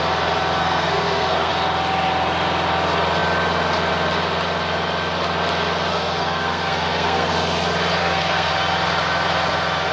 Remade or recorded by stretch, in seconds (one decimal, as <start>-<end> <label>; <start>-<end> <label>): 0.0-0.6 recorded; 0.6-1.5 remade; 1.5-5.9 recorded; 5.9-7.3 remade; 7.3-8.0 recorded; 8.0-8.5 remade; 8.5-9.9 recorded